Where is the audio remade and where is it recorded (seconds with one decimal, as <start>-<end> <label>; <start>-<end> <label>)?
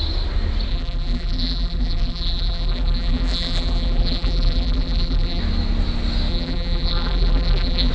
0.0-0.7 recorded; 0.7-5.4 remade; 5.4-6.3 recorded; 6.3-7.9 remade